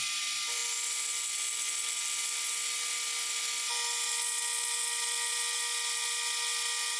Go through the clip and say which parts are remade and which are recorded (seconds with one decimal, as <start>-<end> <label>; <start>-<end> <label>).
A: 0.0-7.0 recorded